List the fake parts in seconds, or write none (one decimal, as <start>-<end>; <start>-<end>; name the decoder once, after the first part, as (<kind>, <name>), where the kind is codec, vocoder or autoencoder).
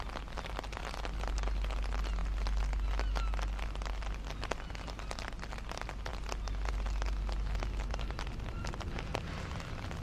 none